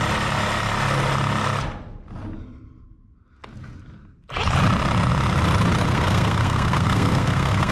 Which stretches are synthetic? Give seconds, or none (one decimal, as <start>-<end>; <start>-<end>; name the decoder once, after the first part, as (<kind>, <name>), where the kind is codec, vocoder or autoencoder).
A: 5.9-7.7 (codec, SNAC)